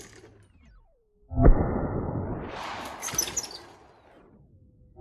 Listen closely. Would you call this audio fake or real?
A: real